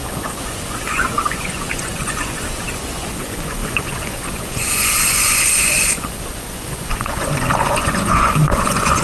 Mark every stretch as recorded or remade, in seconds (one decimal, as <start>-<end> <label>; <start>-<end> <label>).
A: 0.0-9.0 remade